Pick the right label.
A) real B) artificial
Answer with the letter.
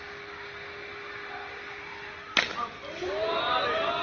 A